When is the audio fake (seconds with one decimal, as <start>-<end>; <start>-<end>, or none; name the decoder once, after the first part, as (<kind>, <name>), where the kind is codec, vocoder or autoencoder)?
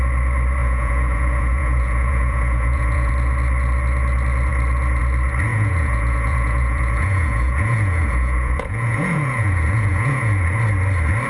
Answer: 0.6-3.1 (vocoder, Vocos); 5.5-10.6